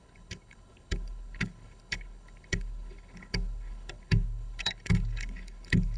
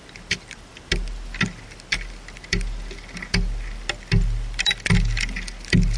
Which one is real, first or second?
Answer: second